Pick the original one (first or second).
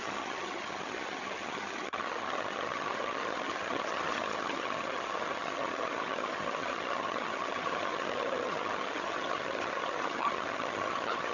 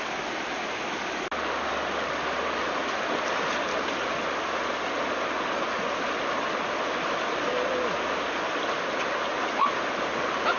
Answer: second